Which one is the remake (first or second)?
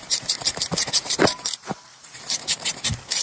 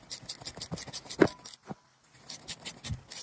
first